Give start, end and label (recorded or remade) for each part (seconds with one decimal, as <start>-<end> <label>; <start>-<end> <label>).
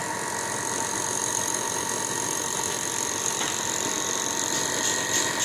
0.0-5.4 recorded